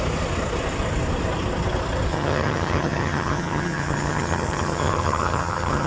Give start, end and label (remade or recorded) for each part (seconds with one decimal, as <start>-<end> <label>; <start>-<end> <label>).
0.0-2.1 recorded; 2.1-5.9 remade